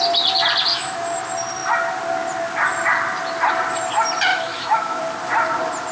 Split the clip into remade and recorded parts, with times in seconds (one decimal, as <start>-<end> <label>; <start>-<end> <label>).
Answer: 0.0-0.7 recorded; 0.7-1.2 remade; 1.2-4.3 recorded; 4.3-5.0 remade; 5.0-5.9 recorded